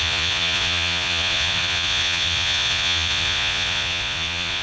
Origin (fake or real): fake